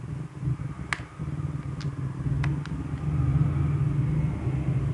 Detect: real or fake real